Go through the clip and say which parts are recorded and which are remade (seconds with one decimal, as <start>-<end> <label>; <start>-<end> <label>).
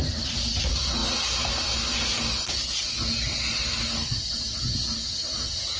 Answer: 0.0-1.0 remade; 1.0-4.3 recorded; 4.3-5.8 remade